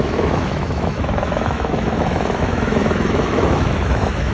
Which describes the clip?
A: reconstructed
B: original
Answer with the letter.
A